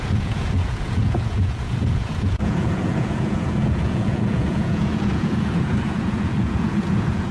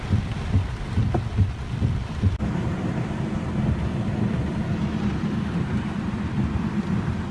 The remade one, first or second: first